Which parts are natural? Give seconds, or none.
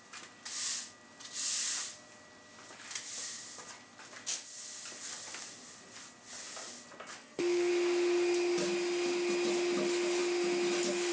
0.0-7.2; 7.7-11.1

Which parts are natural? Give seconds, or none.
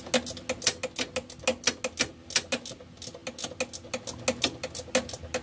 0.0-5.4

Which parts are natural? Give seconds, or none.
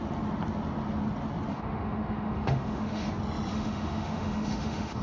0.0-1.5; 3.1-3.5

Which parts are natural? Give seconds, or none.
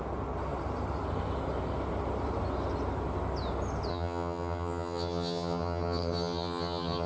0.0-3.9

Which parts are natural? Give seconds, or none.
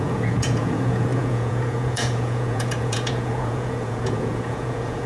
none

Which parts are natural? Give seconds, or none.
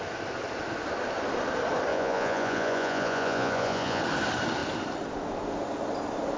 0.0-1.9; 4.0-6.4